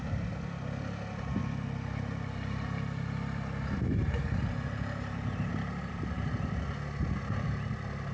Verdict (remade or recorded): recorded